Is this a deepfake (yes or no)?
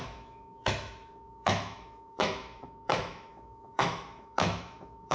yes